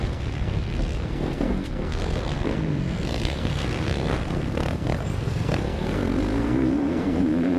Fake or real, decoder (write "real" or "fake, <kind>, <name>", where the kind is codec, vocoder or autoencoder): fake, codec, SNAC